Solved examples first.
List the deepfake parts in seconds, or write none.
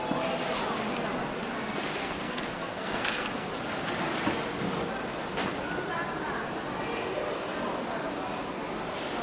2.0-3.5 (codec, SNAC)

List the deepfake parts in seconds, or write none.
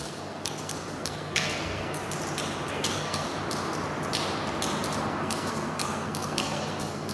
0.0-2.0 (codec, SNAC); 2.7-3.3; 5.0-7.1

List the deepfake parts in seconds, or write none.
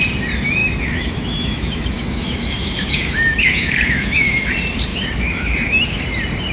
0.6-4.5 (autoencoder, DAC-VAE); 4.9-6.0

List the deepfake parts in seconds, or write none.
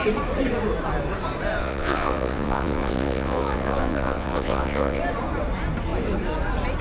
1.6-5.0 (vocoder, WaveNeXt)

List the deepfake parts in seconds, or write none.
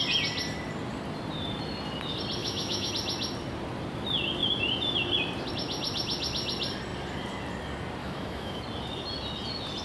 2.4-2.9 (autoencoder, DAC-VAE); 8.0-8.6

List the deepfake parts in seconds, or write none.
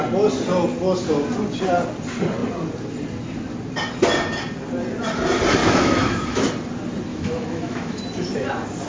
5.6-6.5 (autoencoder, DAC-VAE); 7.1-8.0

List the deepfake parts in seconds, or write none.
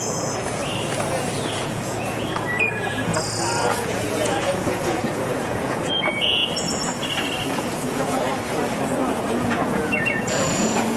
0.0-0.6 (vocoder, Vocos); 1.5-6.4; 7.5-8.3; 9.1-11.0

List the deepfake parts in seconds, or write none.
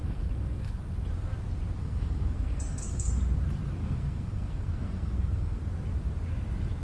0.0-0.8 (codec, SNAC); 1.8-3.1; 3.8-5.6